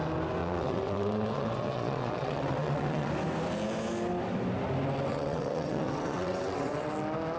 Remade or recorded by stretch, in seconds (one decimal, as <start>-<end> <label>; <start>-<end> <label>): 0.0-0.4 recorded; 0.4-3.1 remade; 3.1-5.1 recorded; 5.1-6.9 remade; 6.9-7.4 recorded